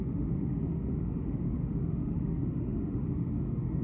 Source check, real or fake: fake